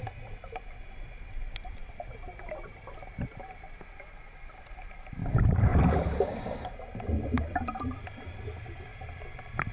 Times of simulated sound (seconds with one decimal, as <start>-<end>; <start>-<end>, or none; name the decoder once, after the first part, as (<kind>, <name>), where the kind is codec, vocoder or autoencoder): 0.0-5.7 (vocoder, BigVGAN v2); 7.4-9.7